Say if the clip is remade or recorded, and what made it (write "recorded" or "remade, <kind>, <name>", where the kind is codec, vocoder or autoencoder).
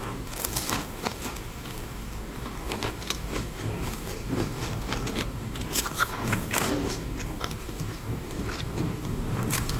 remade, codec, DAC